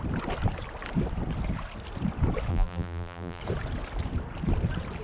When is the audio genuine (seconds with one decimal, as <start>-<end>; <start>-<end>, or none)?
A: 0.0-2.5; 3.4-5.0